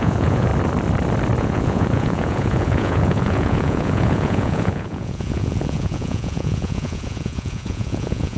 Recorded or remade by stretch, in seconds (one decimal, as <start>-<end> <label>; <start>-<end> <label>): 0.0-0.5 remade; 0.5-1.4 recorded; 1.4-8.4 remade